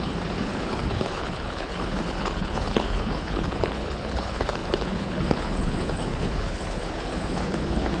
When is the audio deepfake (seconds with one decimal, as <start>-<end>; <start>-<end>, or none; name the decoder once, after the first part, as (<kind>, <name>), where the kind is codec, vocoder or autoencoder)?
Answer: 0.0-8.0 (codec, HILCodec)